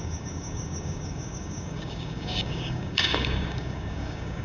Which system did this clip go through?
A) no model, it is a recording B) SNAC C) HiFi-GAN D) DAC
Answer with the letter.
D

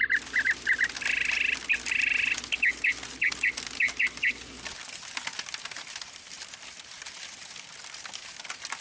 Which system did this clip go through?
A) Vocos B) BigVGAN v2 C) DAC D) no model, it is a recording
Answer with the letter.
D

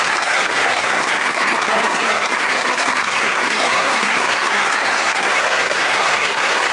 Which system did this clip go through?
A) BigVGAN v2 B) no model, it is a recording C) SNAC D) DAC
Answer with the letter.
C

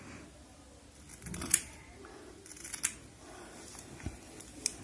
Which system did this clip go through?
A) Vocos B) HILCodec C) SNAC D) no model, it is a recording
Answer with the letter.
D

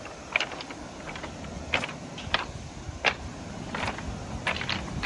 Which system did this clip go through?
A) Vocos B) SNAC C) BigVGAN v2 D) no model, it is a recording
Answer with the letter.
D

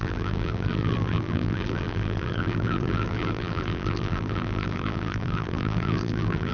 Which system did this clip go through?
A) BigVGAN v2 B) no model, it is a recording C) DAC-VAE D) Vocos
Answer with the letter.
A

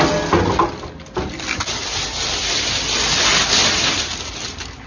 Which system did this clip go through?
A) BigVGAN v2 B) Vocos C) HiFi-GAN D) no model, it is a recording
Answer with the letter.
D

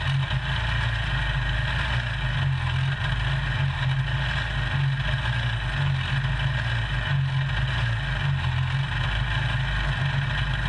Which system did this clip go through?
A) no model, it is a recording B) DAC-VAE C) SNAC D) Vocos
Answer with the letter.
A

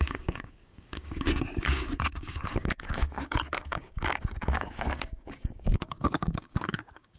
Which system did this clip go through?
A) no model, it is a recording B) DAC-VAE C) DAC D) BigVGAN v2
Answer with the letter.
C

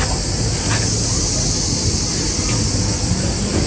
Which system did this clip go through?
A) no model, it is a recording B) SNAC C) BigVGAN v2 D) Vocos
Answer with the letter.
A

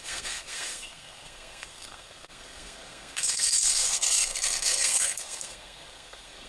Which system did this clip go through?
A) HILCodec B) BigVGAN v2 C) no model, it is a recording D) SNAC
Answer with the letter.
D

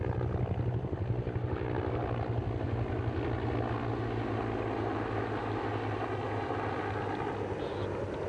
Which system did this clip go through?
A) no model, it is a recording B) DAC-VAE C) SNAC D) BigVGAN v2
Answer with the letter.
A